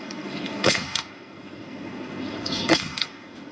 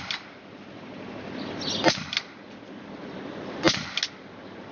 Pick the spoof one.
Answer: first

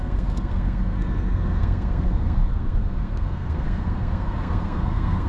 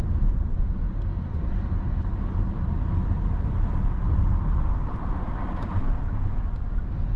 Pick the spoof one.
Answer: first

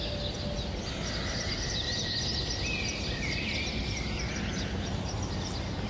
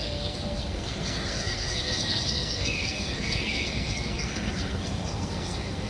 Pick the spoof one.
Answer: second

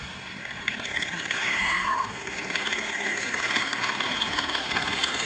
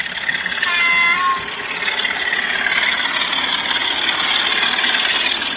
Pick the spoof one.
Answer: first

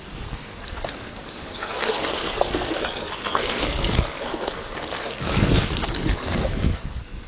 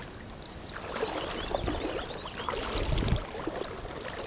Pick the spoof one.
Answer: first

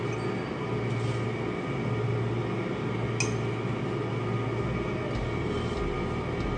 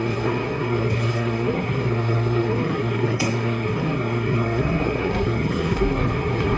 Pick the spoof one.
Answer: second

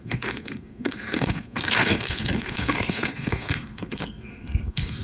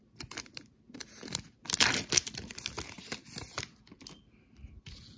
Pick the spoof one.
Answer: first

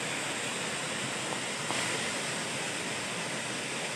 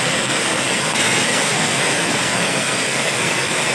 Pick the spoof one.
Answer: second